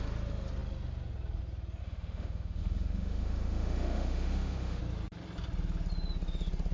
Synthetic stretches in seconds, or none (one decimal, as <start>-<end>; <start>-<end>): 1.8-4.8